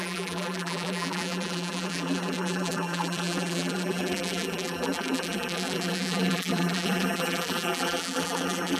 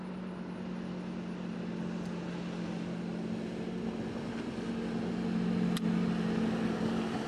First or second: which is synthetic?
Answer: first